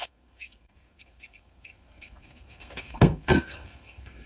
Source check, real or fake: fake